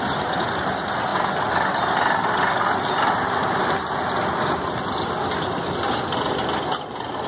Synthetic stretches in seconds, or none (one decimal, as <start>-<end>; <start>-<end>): none